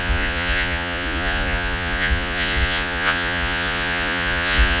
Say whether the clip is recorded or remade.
remade